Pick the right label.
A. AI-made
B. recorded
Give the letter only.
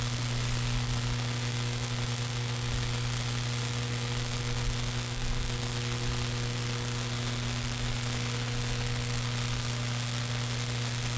B